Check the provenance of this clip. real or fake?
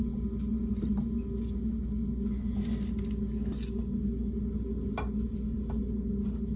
real